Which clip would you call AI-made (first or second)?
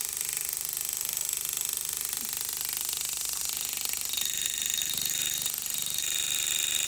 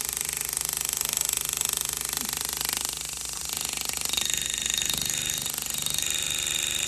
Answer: second